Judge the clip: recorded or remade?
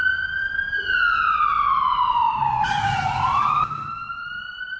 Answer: recorded